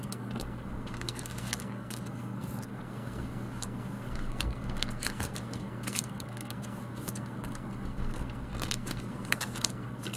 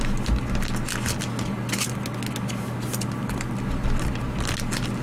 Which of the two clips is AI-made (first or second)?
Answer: first